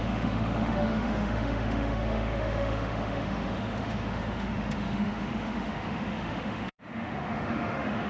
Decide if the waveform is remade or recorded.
remade